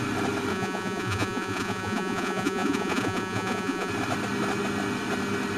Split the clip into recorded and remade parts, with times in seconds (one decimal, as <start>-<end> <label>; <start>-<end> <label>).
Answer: 0.0-0.5 recorded; 0.5-3.9 remade; 3.9-5.6 recorded